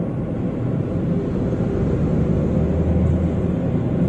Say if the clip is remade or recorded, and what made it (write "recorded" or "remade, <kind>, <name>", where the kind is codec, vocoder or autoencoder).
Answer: recorded